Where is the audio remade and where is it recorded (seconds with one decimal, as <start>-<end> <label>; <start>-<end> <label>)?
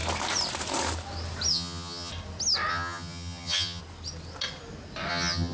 0.0-1.5 recorded; 1.5-2.1 remade; 2.1-2.7 recorded; 2.7-3.8 remade; 3.8-5.1 recorded; 5.1-5.5 remade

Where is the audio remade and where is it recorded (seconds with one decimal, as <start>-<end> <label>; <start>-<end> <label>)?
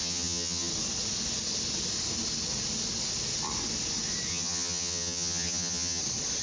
0.0-0.7 remade; 0.7-4.3 recorded; 4.3-6.0 remade; 6.0-6.4 recorded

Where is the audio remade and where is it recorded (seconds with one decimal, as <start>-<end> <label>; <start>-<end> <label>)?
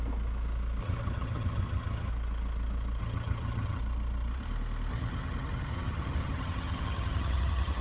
0.0-0.8 recorded; 0.8-2.1 remade; 2.1-3.0 recorded; 3.0-3.8 remade; 3.8-4.9 recorded; 4.9-7.8 remade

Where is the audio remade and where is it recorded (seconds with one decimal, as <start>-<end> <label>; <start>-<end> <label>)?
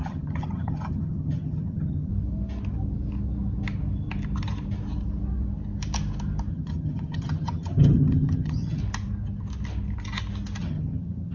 0.0-2.1 remade; 2.1-6.5 recorded; 6.5-8.8 remade; 8.8-10.6 recorded; 10.6-11.3 remade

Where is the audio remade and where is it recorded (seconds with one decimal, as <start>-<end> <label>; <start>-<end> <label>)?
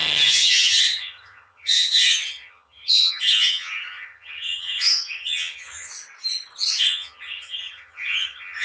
0.0-5.9 remade; 5.9-6.8 recorded; 6.8-8.6 remade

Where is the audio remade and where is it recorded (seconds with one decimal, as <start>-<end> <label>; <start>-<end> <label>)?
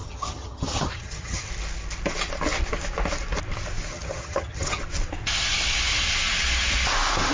0.0-1.5 remade; 1.5-3.9 recorded; 3.9-4.8 remade; 4.8-7.3 recorded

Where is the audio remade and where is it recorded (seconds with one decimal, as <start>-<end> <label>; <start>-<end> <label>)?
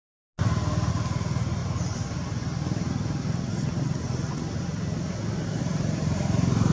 0.0-6.7 recorded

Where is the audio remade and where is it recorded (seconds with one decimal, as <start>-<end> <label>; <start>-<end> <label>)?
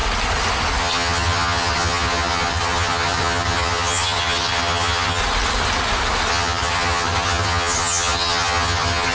0.0-0.8 recorded; 0.8-5.2 remade; 5.2-6.3 recorded; 6.3-9.1 remade